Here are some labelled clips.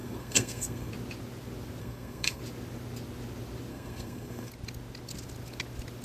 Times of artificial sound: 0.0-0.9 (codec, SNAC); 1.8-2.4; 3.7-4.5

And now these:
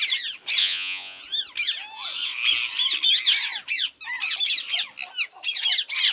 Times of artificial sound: 0.6-1.2 (vocoder, Vocos)